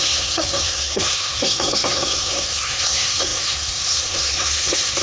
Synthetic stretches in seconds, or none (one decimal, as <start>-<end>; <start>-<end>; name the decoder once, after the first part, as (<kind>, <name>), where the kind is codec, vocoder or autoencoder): 0.0-5.0 (codec, SNAC)